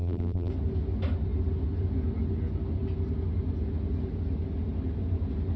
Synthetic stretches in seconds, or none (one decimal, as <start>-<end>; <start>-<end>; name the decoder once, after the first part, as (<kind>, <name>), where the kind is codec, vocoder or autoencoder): 0.0-0.5 (vocoder, BigVGAN v2)

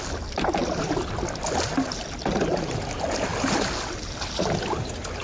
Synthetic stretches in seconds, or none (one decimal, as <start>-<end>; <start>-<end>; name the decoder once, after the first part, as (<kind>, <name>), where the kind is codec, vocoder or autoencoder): none

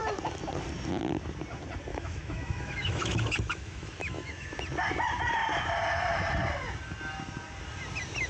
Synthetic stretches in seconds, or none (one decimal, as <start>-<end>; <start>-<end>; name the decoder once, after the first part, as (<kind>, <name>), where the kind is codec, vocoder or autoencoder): 1.9-4.6 (autoencoder, DAC-VAE)

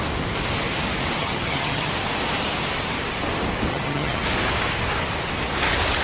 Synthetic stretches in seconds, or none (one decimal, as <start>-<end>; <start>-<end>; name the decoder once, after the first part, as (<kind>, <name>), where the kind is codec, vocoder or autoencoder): 1.2-1.9 (vocoder, HiFi-GAN); 3.7-4.2

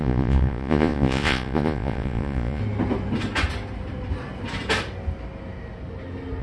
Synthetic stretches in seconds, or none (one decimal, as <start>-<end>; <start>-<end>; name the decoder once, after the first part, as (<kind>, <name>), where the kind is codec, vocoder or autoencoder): 0.0-2.6 (vocoder, Vocos)